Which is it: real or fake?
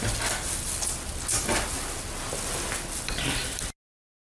real